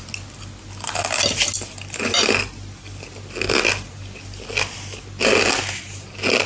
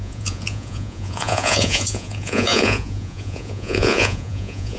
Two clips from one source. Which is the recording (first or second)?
first